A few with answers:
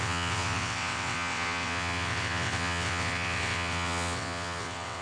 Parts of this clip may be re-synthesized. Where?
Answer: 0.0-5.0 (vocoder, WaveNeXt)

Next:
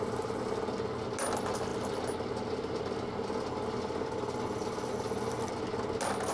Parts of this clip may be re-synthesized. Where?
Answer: none

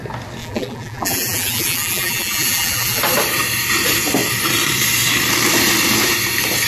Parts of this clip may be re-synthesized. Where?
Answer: 0.4-3.0 (vocoder, BigVGAN v2)

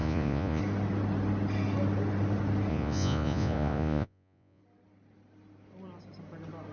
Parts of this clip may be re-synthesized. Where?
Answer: 0.0-0.6 (vocoder, Vocos); 2.7-4.6

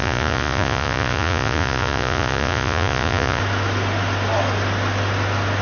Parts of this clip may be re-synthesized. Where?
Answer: 0.0-3.4 (vocoder, Vocos)

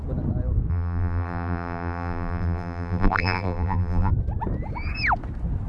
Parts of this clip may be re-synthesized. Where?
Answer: 0.7-4.1 (vocoder, BigVGAN v2)

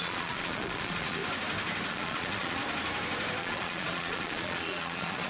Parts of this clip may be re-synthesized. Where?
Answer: 0.0-1.2 (vocoder, Vocos); 1.9-2.6; 3.4-5.3

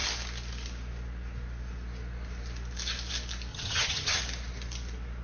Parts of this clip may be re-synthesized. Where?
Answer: 3.5-4.2 (vocoder, HiFi-GAN)